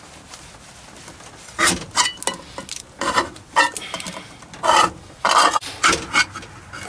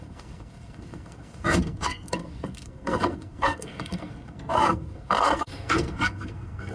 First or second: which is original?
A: first